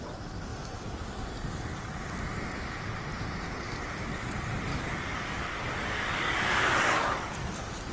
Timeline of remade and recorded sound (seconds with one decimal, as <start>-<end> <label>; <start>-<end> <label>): 0.0-4.7 recorded; 4.7-7.3 remade; 7.3-7.9 recorded

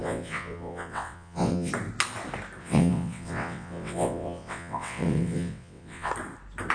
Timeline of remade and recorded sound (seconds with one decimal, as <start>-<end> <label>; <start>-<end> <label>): 0.0-1.7 remade; 1.7-2.6 recorded; 2.6-6.1 remade; 6.1-6.7 recorded

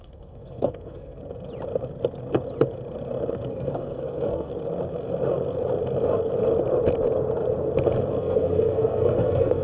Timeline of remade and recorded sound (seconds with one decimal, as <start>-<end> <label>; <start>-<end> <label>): 0.0-1.2 remade; 1.2-3.5 recorded; 3.5-4.5 remade; 4.5-8.2 recorded; 8.2-9.6 remade

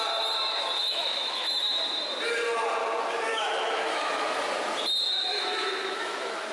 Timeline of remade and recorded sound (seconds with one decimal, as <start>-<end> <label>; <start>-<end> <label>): 0.0-0.8 recorded; 0.8-1.8 remade; 1.8-3.3 recorded; 3.3-4.4 remade; 4.4-5.3 recorded; 5.3-6.5 remade

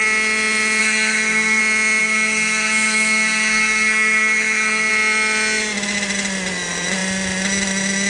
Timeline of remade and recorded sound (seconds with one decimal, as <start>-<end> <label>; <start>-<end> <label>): 0.0-0.8 recorded; 0.8-1.6 remade; 1.6-2.0 recorded; 2.0-4.9 remade; 4.9-8.1 recorded

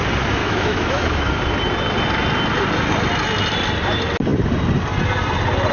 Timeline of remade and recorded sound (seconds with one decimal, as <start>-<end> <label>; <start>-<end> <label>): 0.0-0.4 recorded; 0.4-1.4 remade; 1.4-5.7 recorded

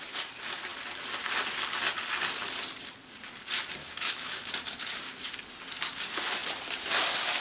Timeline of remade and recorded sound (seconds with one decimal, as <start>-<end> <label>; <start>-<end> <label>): 0.0-3.8 recorded; 3.8-4.5 remade; 4.5-7.4 recorded